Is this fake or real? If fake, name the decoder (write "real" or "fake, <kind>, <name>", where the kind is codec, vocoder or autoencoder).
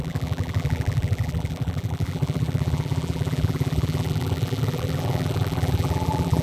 fake, vocoder, BigVGAN v2